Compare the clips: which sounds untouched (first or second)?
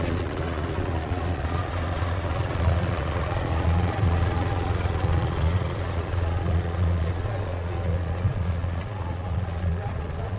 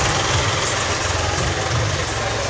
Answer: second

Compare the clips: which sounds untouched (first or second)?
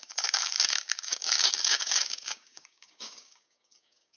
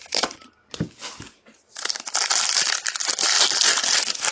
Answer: second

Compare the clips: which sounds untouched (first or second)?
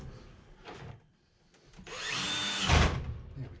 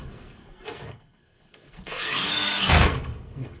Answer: first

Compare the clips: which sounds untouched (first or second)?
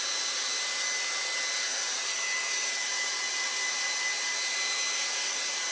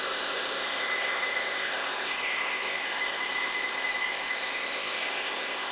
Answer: first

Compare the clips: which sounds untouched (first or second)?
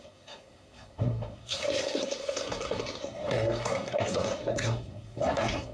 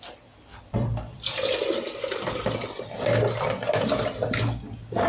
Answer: second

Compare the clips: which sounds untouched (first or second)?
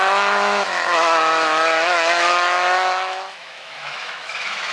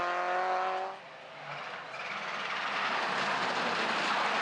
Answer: second